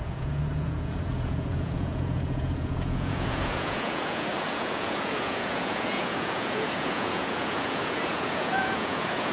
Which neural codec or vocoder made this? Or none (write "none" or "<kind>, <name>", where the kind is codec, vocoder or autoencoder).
vocoder, Vocos